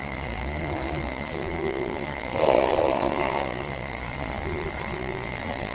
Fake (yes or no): yes